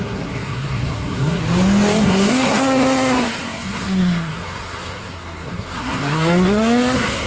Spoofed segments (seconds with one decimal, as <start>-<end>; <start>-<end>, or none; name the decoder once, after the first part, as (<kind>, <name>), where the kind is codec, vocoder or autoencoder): 0.0-1.4 (codec, SNAC); 2.0-7.3